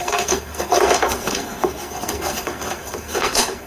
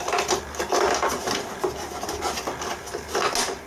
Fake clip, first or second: first